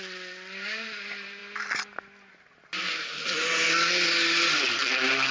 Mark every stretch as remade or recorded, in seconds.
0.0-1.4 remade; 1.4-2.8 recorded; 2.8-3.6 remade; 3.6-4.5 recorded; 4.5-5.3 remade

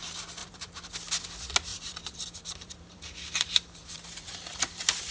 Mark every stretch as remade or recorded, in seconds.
0.0-0.4 recorded; 0.4-0.9 remade; 0.9-1.7 recorded; 1.7-5.1 remade

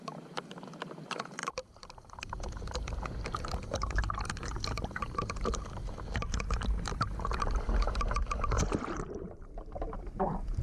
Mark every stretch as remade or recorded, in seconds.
0.0-8.2 remade; 8.2-8.8 recorded; 8.8-10.6 remade

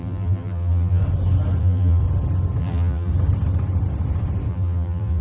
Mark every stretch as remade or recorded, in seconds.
0.0-1.0 remade; 1.0-1.6 recorded; 1.6-2.0 remade; 2.0-2.6 recorded; 2.6-3.1 remade; 3.1-4.5 recorded; 4.5-5.2 remade

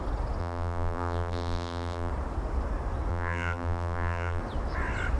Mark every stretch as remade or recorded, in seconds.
0.0-0.4 recorded; 0.4-2.1 remade; 2.1-3.1 recorded; 3.1-4.4 remade; 4.4-5.2 recorded

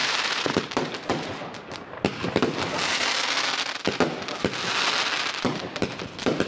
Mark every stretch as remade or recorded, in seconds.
0.0-1.4 remade; 1.4-5.2 recorded; 5.2-6.5 remade

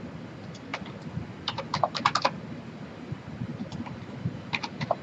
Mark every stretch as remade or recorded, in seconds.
0.0-3.5 recorded; 3.5-4.5 remade; 4.5-5.0 recorded

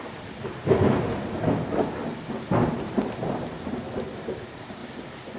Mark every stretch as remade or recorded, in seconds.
0.0-1.1 remade; 1.1-2.7 recorded; 2.7-4.8 remade; 4.8-5.4 recorded